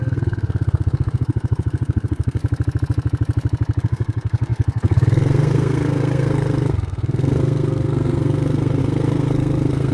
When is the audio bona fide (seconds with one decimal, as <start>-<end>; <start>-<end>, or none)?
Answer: 2.4-3.8